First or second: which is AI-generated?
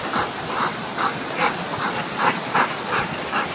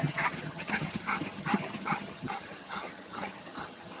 second